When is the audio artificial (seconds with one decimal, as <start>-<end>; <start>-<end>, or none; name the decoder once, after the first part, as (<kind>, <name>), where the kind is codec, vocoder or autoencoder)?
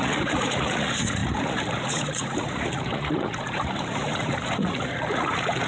0.0-5.7 (vocoder, Vocos)